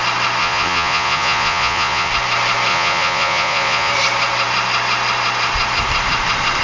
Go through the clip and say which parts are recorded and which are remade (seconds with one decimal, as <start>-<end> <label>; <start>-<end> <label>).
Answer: 0.0-0.4 recorded; 0.4-2.1 remade; 2.1-2.7 recorded; 2.7-3.9 remade; 3.9-6.6 recorded